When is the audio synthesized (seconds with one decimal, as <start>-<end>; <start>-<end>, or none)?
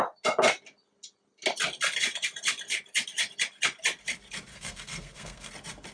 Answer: 4.5-5.5